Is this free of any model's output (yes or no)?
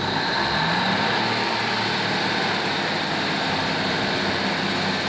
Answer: yes